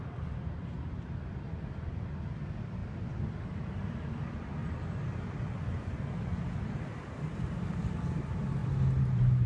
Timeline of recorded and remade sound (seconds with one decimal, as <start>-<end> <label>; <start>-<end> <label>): 0.0-2.8 recorded; 2.8-3.4 remade; 3.4-8.6 recorded; 8.6-9.5 remade